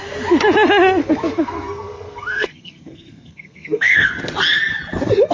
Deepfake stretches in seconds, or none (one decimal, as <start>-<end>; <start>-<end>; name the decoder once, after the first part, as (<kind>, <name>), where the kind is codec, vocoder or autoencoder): 1.0-4.1 (codec, SNAC)